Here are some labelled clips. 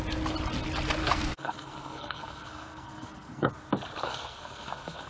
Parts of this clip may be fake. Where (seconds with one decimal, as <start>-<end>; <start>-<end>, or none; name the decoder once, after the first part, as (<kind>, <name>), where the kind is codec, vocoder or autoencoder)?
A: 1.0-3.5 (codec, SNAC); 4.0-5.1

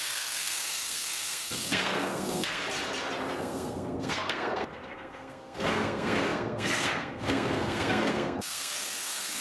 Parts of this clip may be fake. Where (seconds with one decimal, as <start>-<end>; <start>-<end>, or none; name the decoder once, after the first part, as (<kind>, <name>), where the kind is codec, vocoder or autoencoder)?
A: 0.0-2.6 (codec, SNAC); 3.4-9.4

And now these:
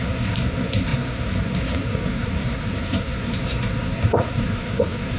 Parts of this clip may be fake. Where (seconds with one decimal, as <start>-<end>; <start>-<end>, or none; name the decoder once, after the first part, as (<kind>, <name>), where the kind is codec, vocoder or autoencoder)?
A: 0.0-5.2 (codec, SNAC)